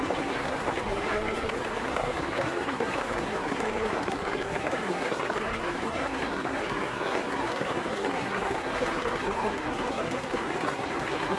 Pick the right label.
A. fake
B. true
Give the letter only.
A